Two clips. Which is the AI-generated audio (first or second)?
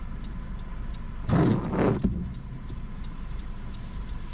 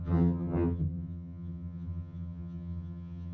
second